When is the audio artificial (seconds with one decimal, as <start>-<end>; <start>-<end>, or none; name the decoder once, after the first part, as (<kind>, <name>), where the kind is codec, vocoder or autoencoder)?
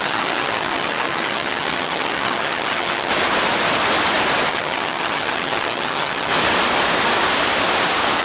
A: 0.0-3.1 (vocoder, HiFi-GAN); 4.5-6.3